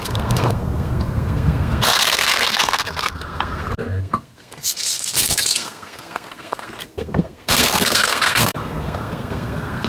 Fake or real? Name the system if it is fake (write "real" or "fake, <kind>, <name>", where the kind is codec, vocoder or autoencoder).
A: fake, codec, SNAC